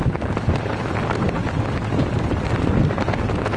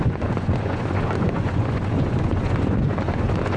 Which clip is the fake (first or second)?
second